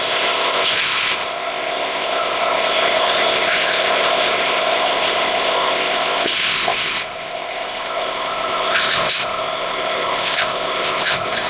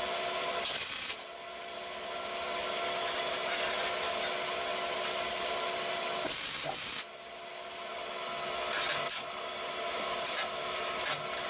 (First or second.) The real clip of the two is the second